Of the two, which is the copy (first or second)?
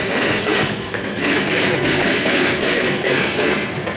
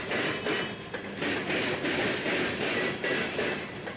first